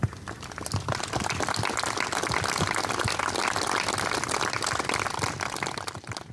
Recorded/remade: recorded